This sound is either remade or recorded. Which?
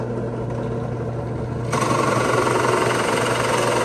recorded